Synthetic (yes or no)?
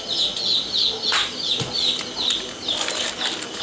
no